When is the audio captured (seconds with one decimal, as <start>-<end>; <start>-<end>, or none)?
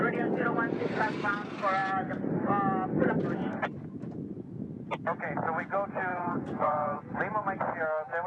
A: 0.0-6.1; 7.0-8.3